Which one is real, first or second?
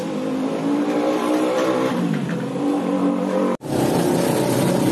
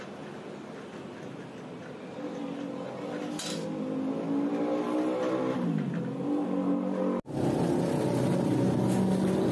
second